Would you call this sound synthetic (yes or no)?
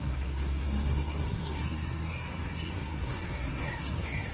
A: yes